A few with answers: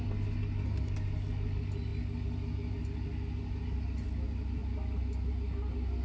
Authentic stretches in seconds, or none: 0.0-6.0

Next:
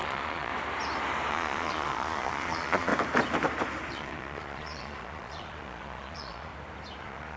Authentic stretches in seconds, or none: 0.5-1.3; 2.9-3.9; 6.5-7.0

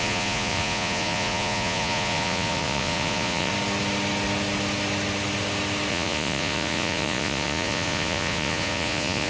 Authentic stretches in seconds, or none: 3.5-5.9

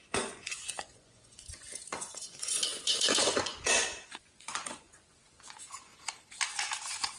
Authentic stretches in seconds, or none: 5.9-7.2

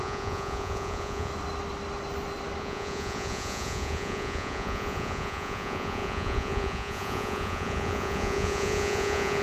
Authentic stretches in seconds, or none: 1.3-2.6